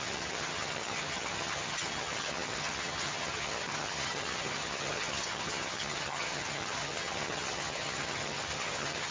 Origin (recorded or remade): remade